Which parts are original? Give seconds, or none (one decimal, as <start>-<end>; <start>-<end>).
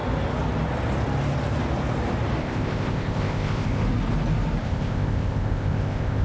0.0-2.4; 3.8-4.6